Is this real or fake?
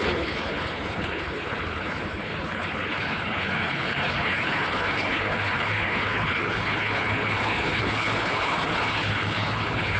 fake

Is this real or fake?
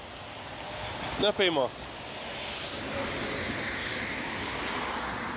real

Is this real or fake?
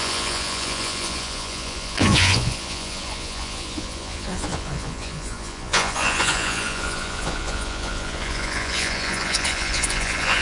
fake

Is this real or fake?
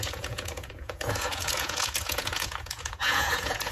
fake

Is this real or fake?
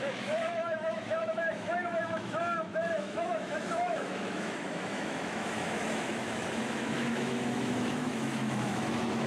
fake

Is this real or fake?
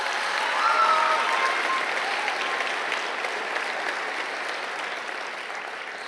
real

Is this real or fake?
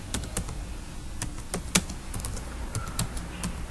real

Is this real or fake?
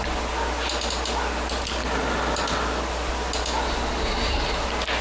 real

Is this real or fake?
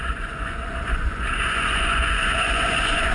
fake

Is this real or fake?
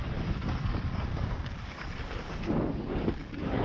fake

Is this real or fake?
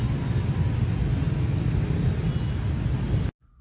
real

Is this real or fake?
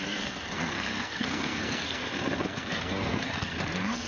fake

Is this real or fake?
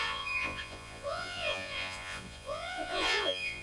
fake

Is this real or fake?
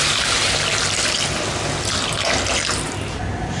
real